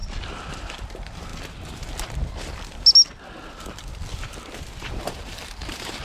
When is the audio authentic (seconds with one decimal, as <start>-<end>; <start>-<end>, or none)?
0.0-0.5; 1.3-4.9